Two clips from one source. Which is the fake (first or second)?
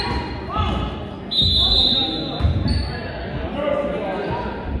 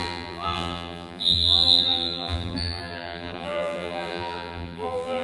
second